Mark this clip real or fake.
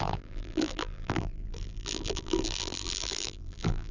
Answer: fake